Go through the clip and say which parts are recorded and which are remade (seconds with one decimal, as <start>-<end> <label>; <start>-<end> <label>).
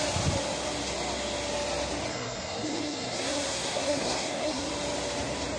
0.0-2.1 recorded; 2.1-4.7 remade; 4.7-5.6 recorded